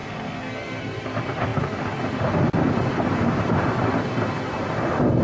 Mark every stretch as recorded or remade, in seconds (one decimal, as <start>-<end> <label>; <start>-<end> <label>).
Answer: 0.0-0.8 remade; 0.8-5.2 recorded